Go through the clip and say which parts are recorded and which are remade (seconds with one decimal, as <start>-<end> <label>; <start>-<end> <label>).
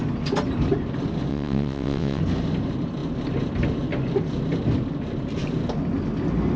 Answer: 0.0-1.3 recorded; 1.3-2.2 remade; 2.2-6.6 recorded